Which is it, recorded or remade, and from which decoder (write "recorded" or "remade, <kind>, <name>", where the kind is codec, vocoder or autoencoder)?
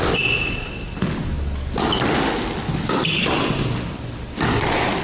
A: recorded